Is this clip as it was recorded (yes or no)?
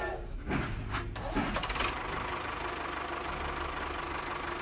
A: yes